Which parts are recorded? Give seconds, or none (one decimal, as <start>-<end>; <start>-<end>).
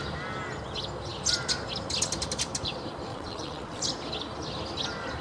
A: 0.0-3.1; 3.8-5.2